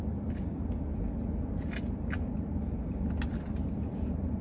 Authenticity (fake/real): real